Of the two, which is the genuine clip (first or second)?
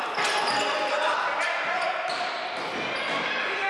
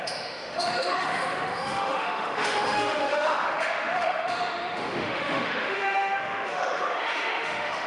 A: first